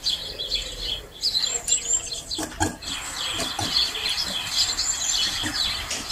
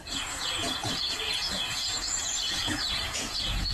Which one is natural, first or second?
first